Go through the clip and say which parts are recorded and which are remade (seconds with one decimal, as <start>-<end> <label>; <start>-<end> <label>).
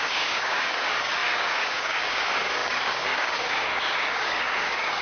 0.0-5.0 remade